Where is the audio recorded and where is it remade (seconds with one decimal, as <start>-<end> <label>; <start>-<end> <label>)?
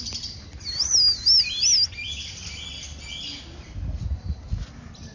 0.0-5.1 recorded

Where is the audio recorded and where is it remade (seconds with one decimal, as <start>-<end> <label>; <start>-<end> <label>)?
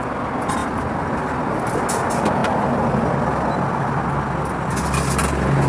0.0-5.7 recorded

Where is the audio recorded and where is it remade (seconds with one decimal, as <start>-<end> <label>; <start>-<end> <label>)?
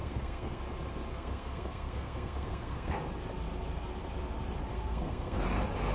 0.0-0.6 remade; 0.6-1.1 recorded; 1.1-2.9 remade; 2.9-4.7 recorded; 4.7-5.4 remade; 5.4-5.9 recorded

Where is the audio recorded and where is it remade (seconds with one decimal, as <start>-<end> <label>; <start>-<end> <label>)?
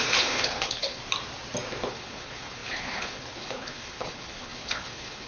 0.0-1.0 remade; 1.0-1.9 recorded; 1.9-5.3 remade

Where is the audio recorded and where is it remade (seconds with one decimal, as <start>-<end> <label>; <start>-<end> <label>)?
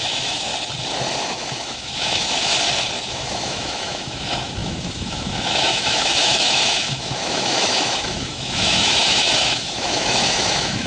0.0-0.5 remade; 0.5-1.2 recorded; 1.2-2.5 remade; 2.5-3.1 recorded; 3.1-10.9 remade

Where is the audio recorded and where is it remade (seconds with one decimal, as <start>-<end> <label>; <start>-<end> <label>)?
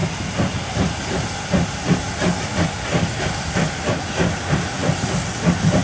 0.0-5.8 recorded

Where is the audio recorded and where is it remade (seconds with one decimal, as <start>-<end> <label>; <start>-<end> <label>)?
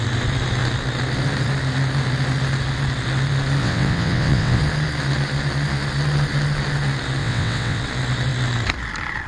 0.0-3.6 recorded; 3.6-4.6 remade; 4.6-7.2 recorded; 7.2-7.8 remade; 7.8-9.3 recorded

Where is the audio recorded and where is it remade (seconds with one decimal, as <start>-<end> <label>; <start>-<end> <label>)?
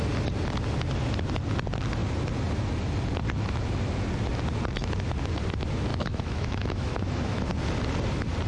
0.0-5.9 recorded; 5.9-7.5 remade; 7.5-8.5 recorded